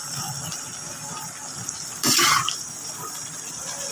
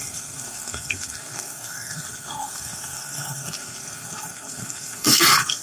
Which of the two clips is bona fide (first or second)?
first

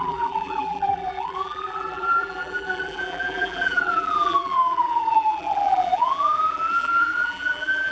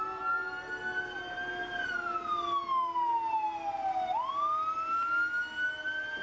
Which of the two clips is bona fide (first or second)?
second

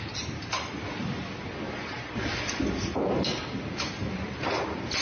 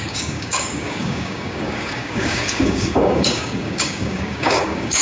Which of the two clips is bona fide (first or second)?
first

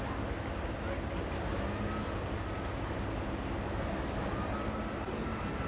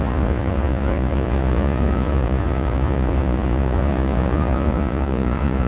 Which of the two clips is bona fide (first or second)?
first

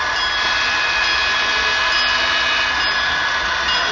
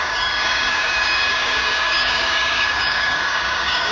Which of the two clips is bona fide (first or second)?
first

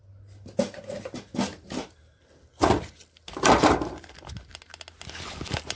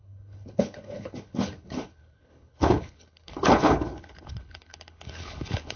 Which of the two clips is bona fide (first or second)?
first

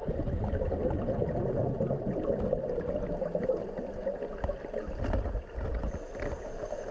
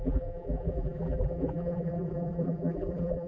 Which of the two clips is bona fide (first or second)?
first